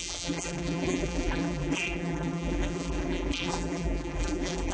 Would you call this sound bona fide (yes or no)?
no